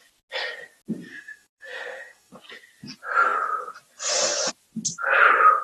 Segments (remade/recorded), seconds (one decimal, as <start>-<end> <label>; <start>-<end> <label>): 0.0-1.1 recorded; 1.1-2.3 remade; 2.3-5.6 recorded